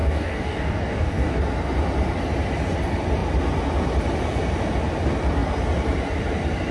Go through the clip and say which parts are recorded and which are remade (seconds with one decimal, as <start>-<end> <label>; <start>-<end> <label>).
0.0-1.4 remade; 1.4-6.7 recorded

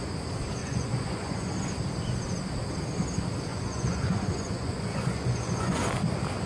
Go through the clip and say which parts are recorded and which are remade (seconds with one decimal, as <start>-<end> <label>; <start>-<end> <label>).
0.0-0.6 recorded; 0.6-1.5 remade; 1.5-3.5 recorded; 3.5-5.8 remade; 5.8-6.5 recorded

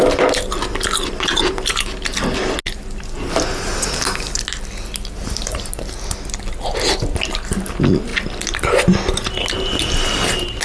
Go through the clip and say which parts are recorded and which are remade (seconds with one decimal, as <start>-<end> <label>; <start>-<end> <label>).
0.0-10.6 recorded

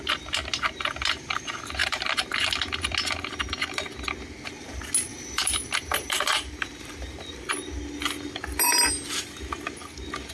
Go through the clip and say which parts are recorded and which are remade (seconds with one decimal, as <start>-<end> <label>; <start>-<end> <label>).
0.0-1.8 recorded; 1.8-2.5 remade; 2.5-5.1 recorded; 5.1-7.5 remade; 7.5-10.3 recorded

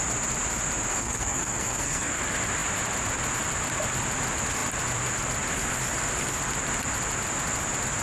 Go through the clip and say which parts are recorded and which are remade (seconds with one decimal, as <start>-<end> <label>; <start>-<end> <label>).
0.0-0.9 recorded; 0.9-2.2 remade; 2.2-8.0 recorded

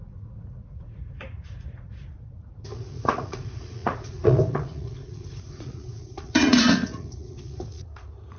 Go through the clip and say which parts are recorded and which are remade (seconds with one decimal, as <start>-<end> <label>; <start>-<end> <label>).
0.0-8.4 remade

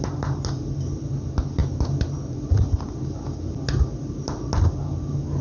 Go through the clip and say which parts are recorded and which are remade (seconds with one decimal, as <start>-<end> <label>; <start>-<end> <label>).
0.0-5.4 recorded

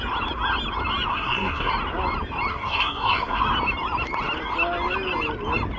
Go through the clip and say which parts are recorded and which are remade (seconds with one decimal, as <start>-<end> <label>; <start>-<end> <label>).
0.0-1.1 recorded; 1.1-1.7 remade; 1.7-2.5 recorded; 2.5-3.4 remade; 3.4-5.8 recorded